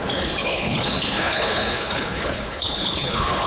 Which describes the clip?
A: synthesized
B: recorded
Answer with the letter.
A